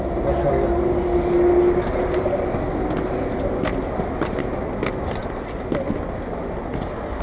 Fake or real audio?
real